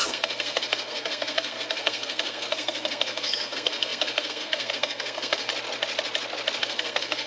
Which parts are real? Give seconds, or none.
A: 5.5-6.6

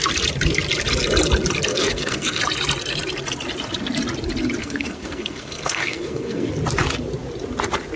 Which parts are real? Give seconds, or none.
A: 0.0-1.7; 2.4-4.6; 6.5-8.0

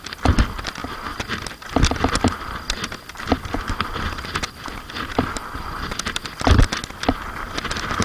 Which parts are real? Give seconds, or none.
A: 0.0-8.0